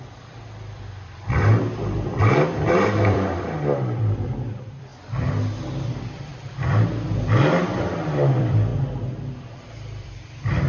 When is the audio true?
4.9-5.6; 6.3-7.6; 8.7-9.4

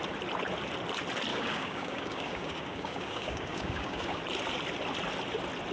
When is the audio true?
0.0-1.3; 4.2-5.7

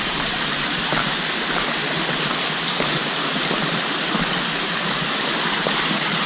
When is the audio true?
0.0-6.3

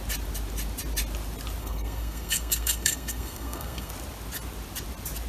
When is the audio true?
0.0-1.6; 3.9-5.3

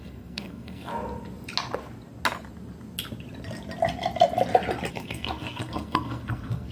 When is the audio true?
0.9-4.9